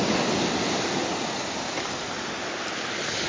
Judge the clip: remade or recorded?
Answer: recorded